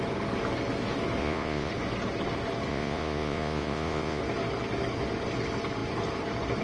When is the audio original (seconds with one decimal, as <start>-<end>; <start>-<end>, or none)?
0.0-1.2; 1.7-2.7; 4.2-6.6